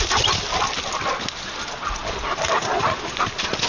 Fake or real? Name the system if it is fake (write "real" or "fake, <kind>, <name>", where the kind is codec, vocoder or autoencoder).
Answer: real